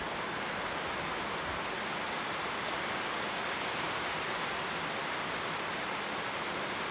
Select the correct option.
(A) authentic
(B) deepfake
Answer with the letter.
A